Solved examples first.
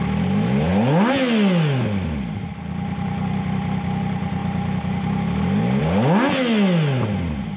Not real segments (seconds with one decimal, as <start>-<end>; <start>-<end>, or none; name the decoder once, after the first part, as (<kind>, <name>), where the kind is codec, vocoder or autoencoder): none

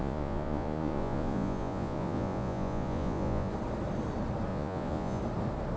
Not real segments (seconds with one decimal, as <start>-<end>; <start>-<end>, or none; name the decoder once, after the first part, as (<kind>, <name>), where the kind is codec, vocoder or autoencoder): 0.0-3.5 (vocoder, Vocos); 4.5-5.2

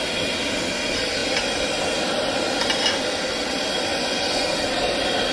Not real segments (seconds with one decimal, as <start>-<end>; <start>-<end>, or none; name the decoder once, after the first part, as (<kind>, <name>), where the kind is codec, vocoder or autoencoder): 3.9-4.5 (vocoder, Vocos)

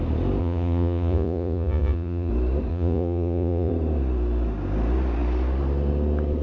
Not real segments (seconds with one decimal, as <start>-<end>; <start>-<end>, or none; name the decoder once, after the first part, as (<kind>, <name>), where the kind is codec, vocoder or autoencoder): 0.4-2.3 (vocoder, Vocos); 2.7-3.7

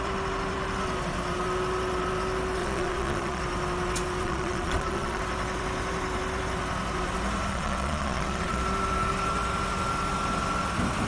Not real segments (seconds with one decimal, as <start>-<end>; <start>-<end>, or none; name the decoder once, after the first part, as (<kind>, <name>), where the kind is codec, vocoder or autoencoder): 2.6-3.4 (vocoder, Vocos); 4.2-5.2; 7.5-8.6